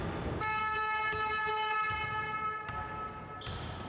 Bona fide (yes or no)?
yes